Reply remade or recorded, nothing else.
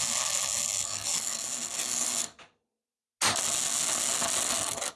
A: recorded